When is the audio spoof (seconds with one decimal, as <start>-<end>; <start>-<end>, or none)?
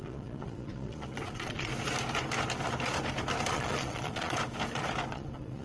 0.0-1.7; 3.5-4.4; 5.1-5.6